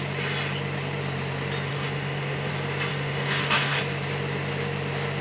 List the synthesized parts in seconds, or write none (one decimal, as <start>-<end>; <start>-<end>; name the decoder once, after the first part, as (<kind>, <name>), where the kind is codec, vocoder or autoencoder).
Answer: 1.7-2.5 (autoencoder, DAC-VAE); 2.9-3.8